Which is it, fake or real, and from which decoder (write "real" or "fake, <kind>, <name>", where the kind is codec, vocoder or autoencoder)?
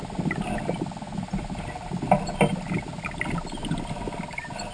real